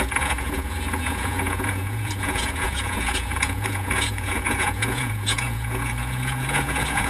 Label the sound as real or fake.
fake